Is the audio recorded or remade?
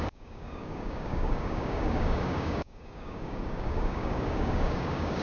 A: remade